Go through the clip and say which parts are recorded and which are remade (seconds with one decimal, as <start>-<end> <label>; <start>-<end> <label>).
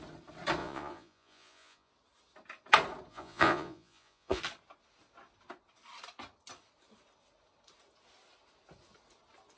0.0-0.6 recorded; 0.6-1.9 remade; 1.9-3.1 recorded; 3.1-4.4 remade; 4.4-9.6 recorded